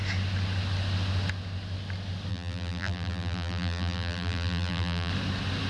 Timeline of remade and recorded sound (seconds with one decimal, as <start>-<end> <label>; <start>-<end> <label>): 0.0-2.3 recorded; 2.3-5.1 remade; 5.1-5.7 recorded